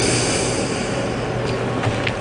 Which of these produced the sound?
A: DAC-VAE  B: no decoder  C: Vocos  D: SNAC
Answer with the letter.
B